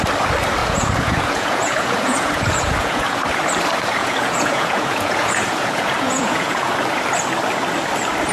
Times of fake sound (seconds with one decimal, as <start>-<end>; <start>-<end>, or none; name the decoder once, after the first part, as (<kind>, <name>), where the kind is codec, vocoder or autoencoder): 0.6-3.2 (vocoder, Vocos); 4.0-6.7